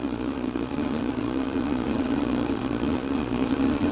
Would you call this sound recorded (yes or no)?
no